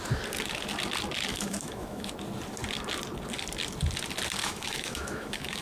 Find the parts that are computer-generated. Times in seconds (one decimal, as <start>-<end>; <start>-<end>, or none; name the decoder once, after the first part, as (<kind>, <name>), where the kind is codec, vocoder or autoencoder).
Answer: 1.3-2.1 (autoencoder, DAC-VAE); 4.4-5.6